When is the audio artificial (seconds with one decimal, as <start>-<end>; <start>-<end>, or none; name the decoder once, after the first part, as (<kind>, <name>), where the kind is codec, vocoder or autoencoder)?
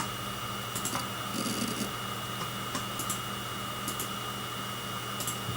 none